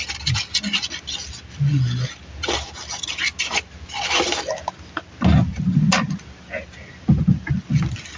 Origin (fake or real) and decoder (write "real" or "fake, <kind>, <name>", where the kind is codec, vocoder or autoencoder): real